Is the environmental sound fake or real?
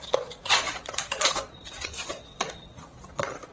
fake